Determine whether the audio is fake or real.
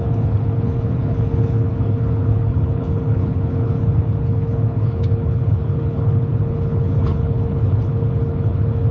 fake